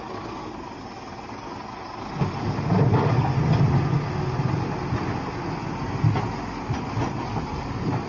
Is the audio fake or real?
real